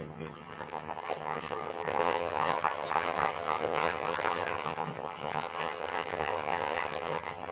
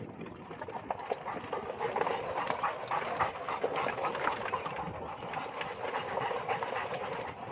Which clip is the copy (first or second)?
first